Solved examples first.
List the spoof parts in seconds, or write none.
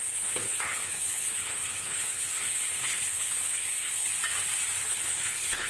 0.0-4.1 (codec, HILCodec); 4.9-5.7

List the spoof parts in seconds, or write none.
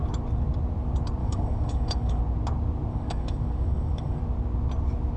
1.2-2.2 (codec, DAC); 2.9-4.2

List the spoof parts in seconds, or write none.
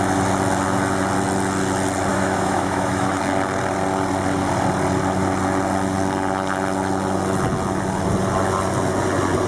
2.1-3.2 (autoencoder, DAC-VAE)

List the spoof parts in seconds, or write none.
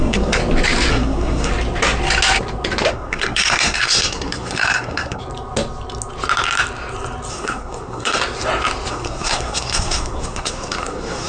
0.0-0.4 (codec, SNAC); 0.9-1.5; 2.9-5.2; 7.3-8.2; 8.9-11.3